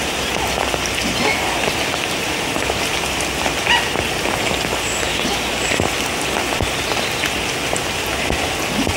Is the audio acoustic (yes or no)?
yes